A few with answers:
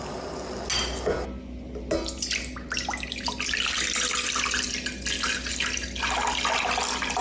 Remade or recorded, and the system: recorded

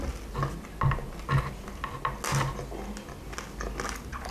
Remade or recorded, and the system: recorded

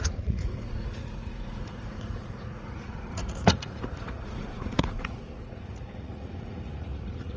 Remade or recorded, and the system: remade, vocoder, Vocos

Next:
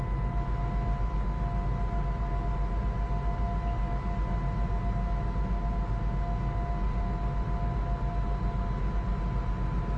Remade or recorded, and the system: recorded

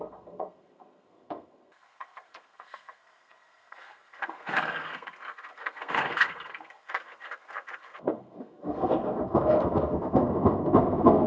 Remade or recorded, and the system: remade, codec, SNAC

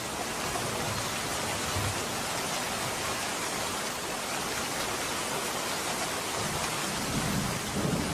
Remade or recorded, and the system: recorded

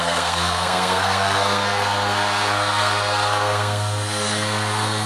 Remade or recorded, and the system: remade, codec, SNAC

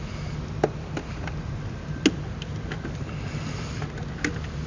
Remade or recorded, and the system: recorded